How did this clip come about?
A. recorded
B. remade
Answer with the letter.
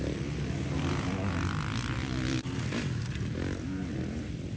A